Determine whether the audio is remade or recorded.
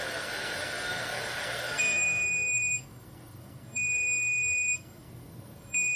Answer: remade